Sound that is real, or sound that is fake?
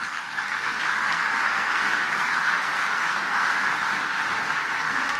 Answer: fake